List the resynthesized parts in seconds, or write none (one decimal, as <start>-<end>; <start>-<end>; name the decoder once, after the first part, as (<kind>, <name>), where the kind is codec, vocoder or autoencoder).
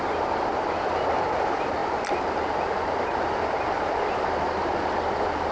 none